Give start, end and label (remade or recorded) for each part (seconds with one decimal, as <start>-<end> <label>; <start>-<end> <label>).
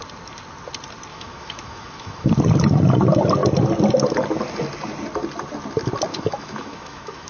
0.0-1.1 recorded; 1.1-2.3 remade; 2.3-6.1 recorded; 6.1-7.3 remade